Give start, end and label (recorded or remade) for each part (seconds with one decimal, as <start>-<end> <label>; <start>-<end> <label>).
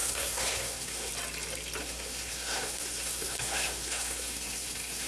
0.0-1.1 remade; 1.1-1.8 recorded; 1.8-5.1 remade